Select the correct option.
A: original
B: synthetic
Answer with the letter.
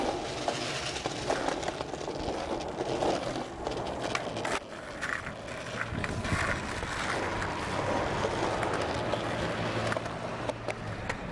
A